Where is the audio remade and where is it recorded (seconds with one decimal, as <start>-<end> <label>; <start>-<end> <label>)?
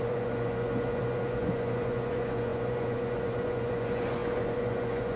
0.0-5.2 remade